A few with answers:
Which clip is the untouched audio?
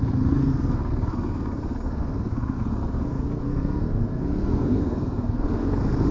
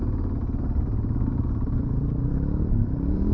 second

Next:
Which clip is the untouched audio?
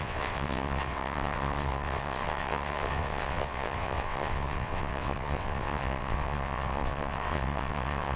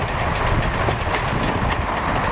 second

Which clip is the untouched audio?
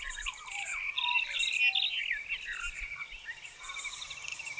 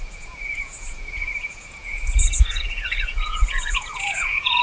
first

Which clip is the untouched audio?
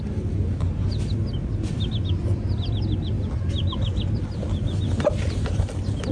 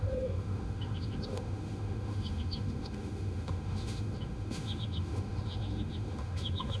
first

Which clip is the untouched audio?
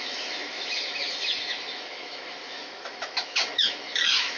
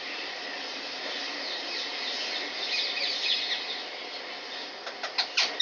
second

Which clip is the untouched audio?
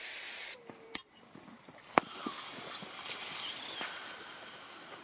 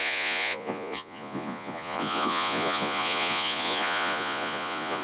first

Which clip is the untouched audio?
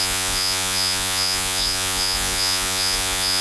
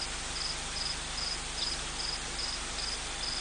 second